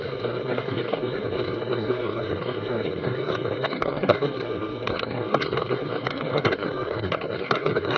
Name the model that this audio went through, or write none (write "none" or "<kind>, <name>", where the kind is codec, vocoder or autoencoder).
codec, SNAC